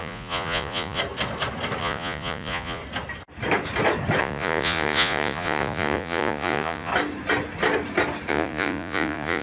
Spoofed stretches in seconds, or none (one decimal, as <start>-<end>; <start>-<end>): 0.0-1.0; 1.8-2.8; 4.2-6.9; 8.3-9.4